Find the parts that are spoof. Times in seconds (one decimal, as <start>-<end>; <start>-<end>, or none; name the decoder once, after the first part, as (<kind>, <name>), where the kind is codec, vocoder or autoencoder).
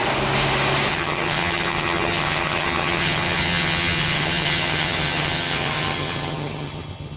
0.9-7.2 (vocoder, HiFi-GAN)